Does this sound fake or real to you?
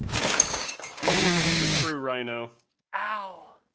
fake